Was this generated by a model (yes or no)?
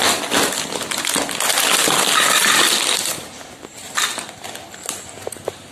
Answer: no